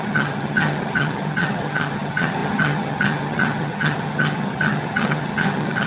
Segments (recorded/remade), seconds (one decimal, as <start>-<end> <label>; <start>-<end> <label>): 0.0-5.9 remade